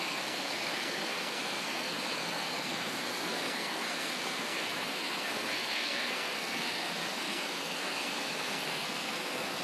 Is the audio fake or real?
fake